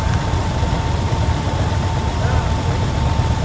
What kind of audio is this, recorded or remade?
recorded